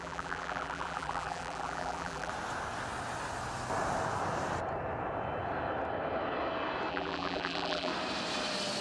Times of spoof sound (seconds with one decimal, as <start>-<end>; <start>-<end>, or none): 0.0-2.3; 6.9-7.9